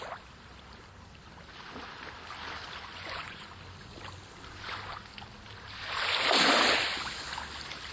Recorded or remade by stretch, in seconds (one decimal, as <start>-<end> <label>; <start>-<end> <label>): 0.0-2.9 recorded; 2.9-3.5 remade; 3.5-7.9 recorded